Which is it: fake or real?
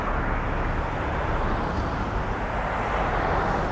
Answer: real